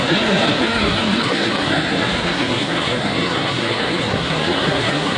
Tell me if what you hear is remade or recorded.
remade